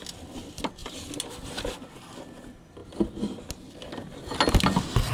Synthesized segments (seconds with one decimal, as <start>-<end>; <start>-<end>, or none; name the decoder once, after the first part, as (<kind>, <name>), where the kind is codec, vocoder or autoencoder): none